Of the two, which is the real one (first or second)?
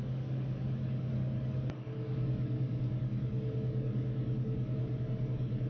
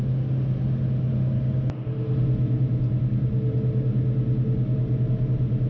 second